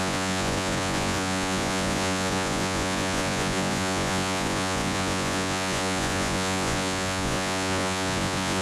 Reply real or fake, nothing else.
fake